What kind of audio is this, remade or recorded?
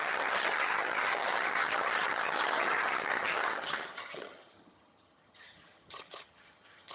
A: remade